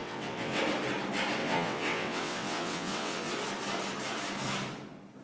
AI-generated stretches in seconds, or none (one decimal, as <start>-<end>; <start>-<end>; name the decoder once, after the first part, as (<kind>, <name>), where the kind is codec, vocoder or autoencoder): 0.0-0.6 (vocoder, WaveNeXt); 1.4-3.3